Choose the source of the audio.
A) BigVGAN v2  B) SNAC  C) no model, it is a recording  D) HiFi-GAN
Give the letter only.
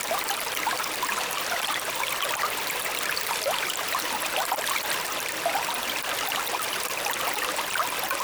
A